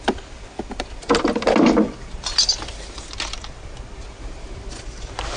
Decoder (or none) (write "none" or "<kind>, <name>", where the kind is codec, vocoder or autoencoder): none